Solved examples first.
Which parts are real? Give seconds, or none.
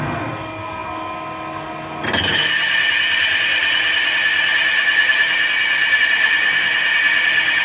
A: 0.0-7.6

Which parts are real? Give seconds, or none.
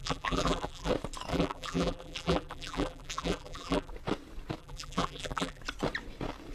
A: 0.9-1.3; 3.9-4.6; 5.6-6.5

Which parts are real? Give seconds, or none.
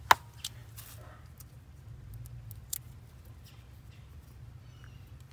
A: 0.0-5.3